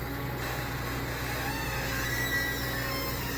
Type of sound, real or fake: real